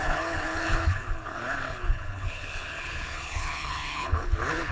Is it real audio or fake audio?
fake